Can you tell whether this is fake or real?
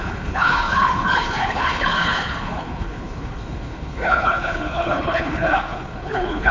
fake